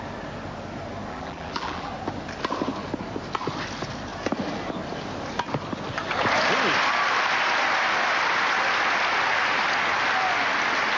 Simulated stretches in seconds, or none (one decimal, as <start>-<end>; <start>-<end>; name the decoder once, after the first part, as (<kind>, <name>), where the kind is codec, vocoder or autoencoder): 1.1-1.9 (vocoder, BigVGAN v2)